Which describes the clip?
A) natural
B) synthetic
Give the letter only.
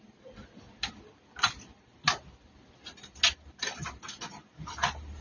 A